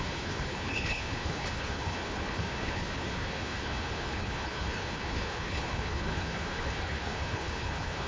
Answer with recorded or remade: remade